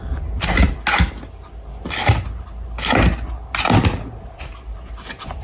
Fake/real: real